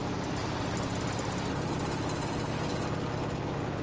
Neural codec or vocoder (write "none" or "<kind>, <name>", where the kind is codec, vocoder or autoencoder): none